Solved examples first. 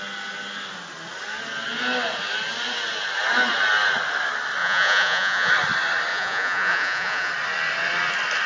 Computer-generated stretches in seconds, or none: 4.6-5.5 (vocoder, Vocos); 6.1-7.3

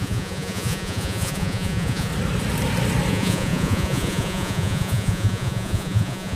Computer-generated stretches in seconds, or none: 0.0-2.1 (vocoder, Vocos); 3.1-6.4

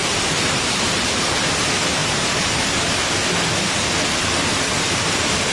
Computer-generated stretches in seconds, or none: 0.0-1.4 (vocoder, BigVGAN v2); 2.0-2.9